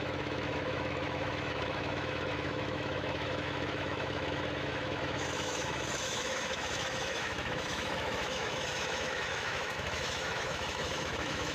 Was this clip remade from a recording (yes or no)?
yes